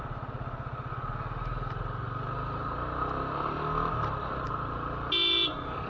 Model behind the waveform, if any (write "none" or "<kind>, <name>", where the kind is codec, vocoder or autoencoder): none